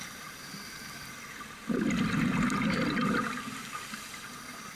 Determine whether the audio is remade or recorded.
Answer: recorded